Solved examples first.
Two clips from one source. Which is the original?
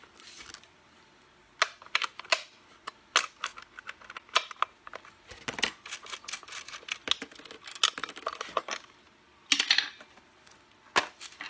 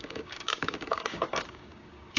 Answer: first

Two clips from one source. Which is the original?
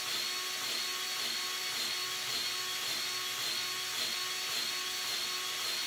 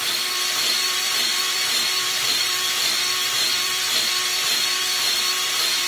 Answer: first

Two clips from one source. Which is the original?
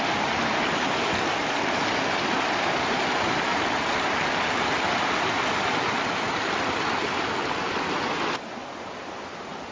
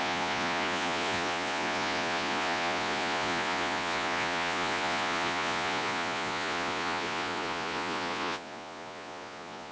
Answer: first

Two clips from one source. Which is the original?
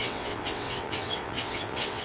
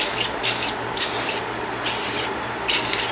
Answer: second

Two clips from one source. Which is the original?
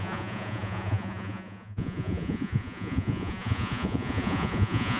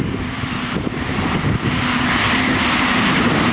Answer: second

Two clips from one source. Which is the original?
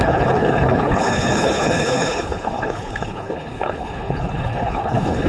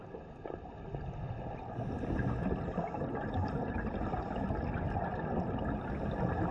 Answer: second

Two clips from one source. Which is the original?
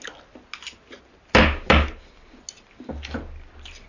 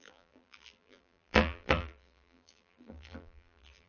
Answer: first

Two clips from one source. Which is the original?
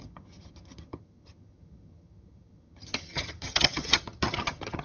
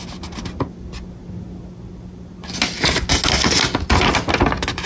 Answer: second